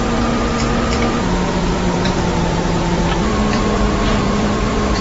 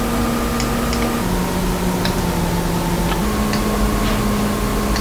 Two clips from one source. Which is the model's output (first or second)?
first